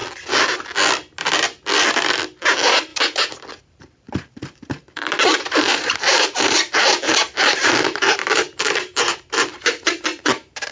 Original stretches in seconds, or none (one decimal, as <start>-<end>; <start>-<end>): 0.0-2.5; 2.9-3.6